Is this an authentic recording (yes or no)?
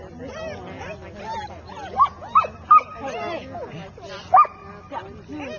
yes